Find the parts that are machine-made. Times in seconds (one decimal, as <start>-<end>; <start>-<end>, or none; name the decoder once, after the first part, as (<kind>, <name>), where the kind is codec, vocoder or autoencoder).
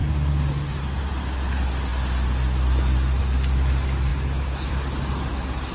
none